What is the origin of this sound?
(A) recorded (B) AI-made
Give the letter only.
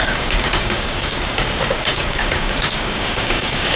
B